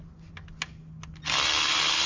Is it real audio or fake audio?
real